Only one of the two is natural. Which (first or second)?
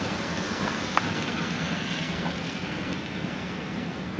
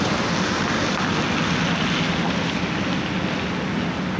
second